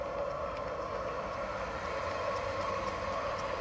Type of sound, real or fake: real